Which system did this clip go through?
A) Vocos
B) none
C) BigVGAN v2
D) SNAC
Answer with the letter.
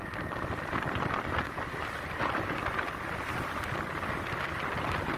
C